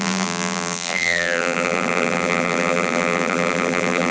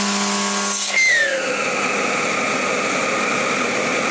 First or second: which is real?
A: second